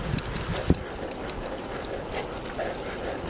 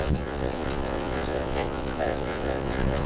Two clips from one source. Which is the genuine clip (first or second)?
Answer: first